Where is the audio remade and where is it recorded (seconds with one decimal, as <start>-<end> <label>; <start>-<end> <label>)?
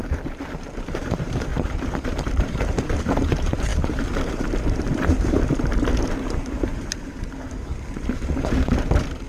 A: 0.0-1.5 remade; 1.5-2.2 recorded; 2.2-9.3 remade